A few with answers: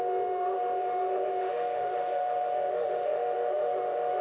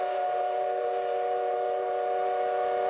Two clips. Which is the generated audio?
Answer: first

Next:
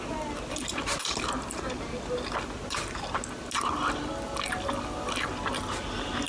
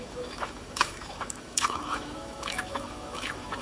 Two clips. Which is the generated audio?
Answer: second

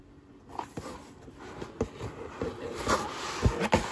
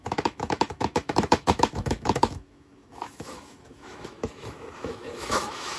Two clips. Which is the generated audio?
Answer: second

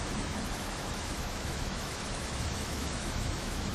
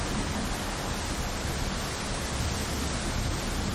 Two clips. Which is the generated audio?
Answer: first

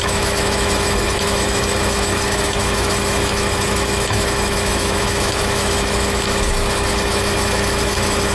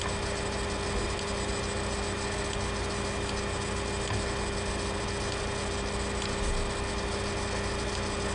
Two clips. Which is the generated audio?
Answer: first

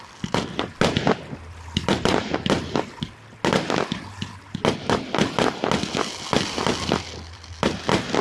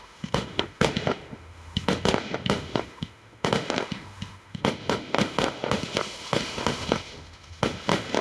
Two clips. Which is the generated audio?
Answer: second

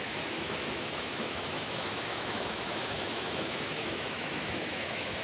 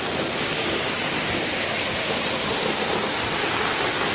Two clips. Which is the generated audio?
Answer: first